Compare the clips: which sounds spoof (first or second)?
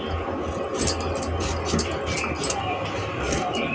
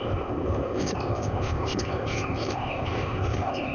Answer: second